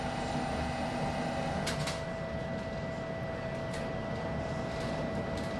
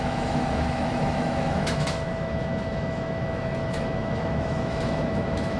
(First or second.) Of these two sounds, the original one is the first